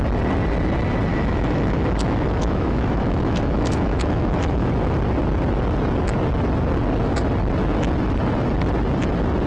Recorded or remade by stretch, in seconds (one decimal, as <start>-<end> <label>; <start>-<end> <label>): 0.0-1.1 recorded; 1.1-4.7 remade; 4.7-9.5 recorded